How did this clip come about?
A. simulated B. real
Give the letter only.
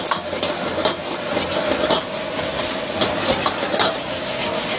B